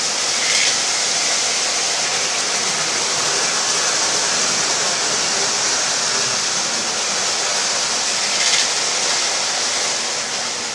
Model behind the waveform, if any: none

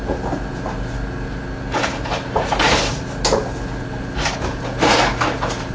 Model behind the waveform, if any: none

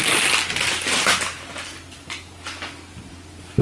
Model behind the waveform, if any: none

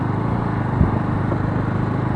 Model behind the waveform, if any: none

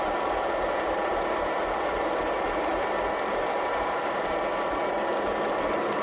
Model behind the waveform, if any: vocoder, BigVGAN v2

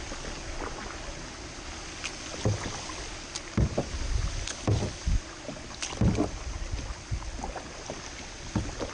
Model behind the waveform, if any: none